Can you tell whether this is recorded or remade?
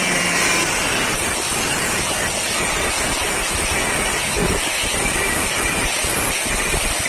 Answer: recorded